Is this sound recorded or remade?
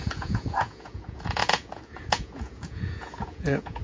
remade